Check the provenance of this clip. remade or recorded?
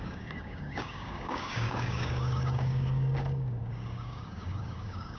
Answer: remade